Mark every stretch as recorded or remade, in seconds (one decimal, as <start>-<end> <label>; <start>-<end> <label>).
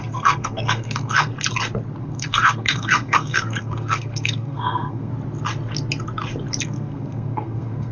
0.0-1.3 remade; 1.3-2.0 recorded; 2.0-5.1 remade; 5.1-6.6 recorded; 6.6-7.9 remade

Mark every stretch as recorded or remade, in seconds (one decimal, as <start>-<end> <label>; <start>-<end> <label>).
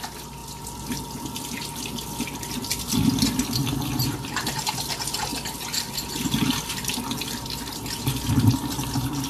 0.0-9.3 recorded